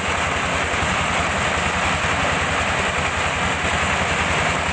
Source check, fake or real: real